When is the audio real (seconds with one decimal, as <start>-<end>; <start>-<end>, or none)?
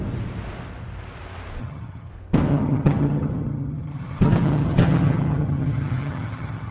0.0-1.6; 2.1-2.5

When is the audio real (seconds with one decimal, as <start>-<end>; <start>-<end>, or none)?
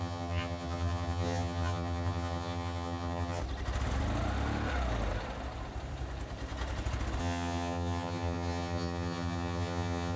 3.4-7.2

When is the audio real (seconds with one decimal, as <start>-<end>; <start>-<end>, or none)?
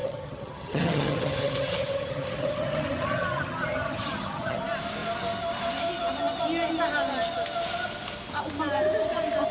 4.6-9.5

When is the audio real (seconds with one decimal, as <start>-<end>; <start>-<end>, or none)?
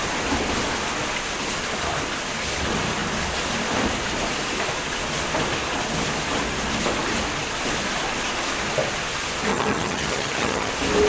0.0-9.5; 10.7-11.1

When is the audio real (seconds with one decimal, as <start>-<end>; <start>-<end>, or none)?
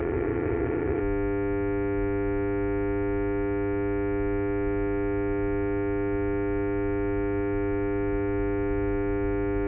1.0-9.7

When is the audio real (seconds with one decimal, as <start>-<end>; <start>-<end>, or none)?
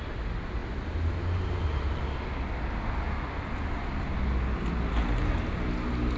0.0-6.2